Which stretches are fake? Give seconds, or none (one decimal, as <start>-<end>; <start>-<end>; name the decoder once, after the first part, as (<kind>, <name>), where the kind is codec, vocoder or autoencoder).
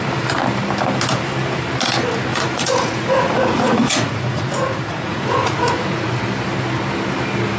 2.3-6.2 (vocoder, Vocos)